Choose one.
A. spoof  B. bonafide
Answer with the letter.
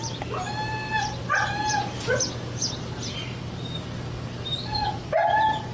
B